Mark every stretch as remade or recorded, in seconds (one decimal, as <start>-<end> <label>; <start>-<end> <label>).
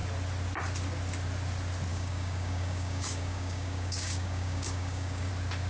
0.0-1.9 recorded; 1.9-5.3 remade; 5.3-5.7 recorded